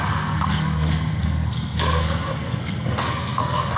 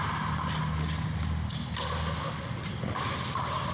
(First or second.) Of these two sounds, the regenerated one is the first